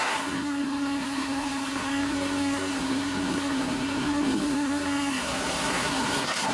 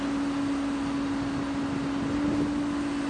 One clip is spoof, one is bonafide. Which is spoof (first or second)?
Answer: first